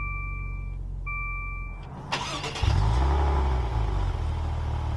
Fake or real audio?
real